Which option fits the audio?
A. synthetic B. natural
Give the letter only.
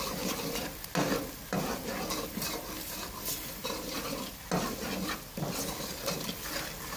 B